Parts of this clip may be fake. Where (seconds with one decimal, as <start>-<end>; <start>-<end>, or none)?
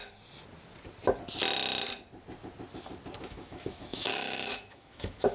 3.2-5.3